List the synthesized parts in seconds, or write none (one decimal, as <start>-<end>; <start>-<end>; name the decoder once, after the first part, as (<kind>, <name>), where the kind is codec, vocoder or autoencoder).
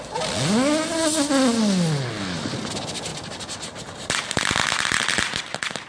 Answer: 3.1-3.6 (vocoder, BigVGAN v2); 4.6-5.4